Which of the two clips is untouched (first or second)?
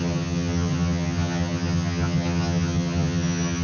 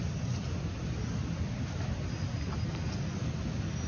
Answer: second